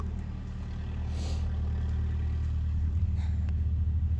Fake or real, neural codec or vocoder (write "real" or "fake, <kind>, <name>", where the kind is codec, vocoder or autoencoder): real